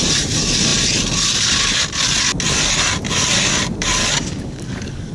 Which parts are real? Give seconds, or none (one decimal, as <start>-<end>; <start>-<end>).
0.0-4.0